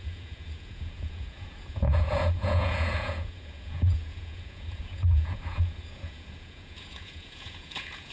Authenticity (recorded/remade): remade